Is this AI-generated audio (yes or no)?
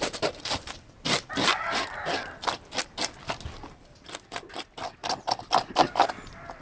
no